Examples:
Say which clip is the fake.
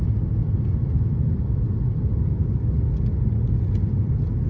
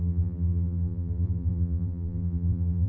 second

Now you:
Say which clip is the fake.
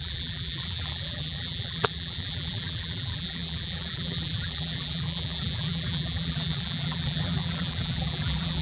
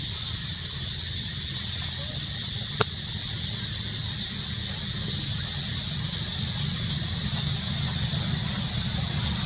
first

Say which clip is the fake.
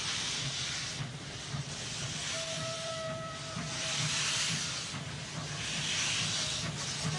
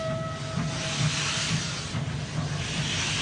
first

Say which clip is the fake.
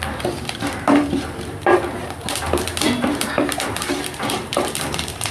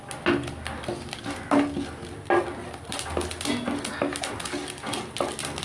first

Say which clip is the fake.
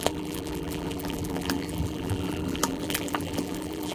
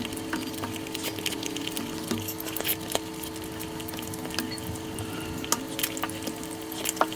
first